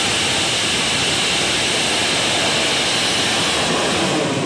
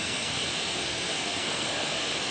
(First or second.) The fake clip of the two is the second